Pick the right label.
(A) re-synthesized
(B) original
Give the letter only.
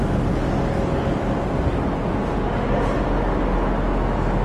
B